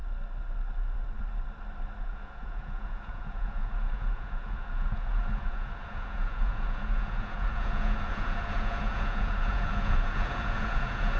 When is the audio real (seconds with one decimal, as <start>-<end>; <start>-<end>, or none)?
0.0-2.0